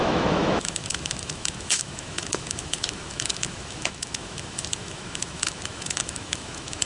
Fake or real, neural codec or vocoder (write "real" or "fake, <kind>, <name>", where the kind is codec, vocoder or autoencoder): fake, autoencoder, DAC-VAE